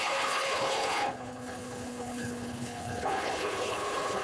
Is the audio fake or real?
fake